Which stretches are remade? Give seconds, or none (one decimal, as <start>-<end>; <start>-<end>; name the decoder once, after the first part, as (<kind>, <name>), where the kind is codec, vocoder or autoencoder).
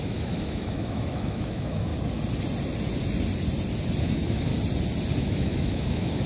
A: 0.0-1.9 (autoencoder, DAC-VAE); 4.0-4.5; 5.2-6.3